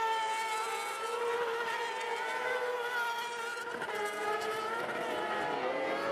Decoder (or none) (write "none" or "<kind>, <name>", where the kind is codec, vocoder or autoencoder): none